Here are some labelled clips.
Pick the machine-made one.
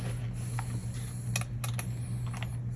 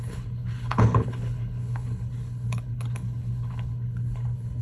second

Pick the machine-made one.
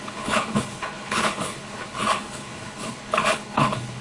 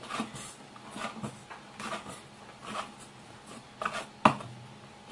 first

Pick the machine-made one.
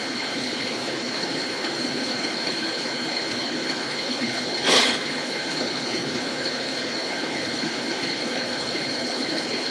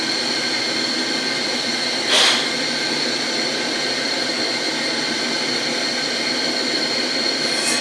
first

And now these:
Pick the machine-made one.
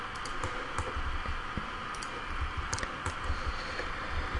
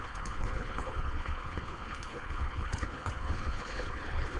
second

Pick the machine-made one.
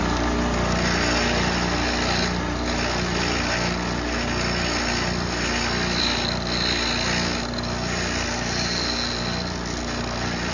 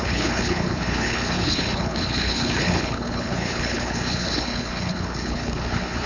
second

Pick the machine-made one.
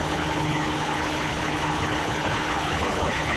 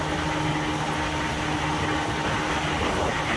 first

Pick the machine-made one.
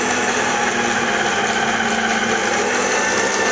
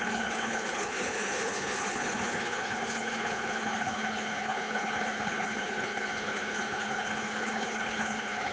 second